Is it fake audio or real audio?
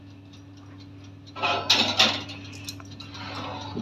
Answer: real